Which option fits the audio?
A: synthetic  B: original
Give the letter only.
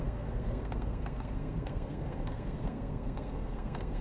A